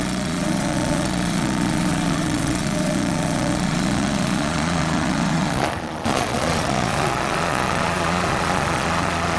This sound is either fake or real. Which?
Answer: fake